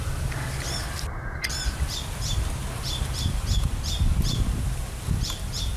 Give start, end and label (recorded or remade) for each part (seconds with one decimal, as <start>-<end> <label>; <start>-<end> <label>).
0.0-3.5 remade; 3.5-5.8 recorded